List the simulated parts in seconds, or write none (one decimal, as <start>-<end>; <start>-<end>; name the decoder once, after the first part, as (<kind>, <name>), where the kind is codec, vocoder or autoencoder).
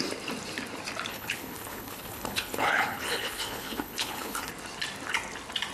1.1-4.5 (codec, HILCodec)